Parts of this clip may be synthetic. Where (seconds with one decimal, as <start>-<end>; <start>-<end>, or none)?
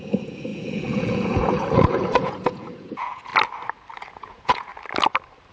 0.0-3.3; 4.1-4.7